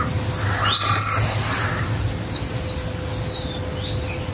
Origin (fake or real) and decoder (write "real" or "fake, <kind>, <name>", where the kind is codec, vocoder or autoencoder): real